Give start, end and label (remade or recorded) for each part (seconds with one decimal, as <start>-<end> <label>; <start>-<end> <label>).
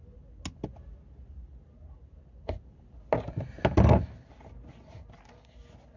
0.0-6.0 recorded